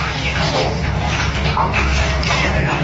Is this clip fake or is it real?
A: fake